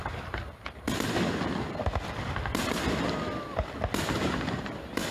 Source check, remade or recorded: recorded